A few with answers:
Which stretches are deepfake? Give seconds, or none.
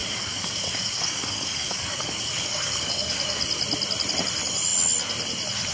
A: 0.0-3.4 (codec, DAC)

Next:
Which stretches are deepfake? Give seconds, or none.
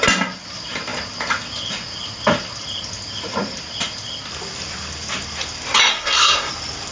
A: 5.9-6.5 (codec, SNAC)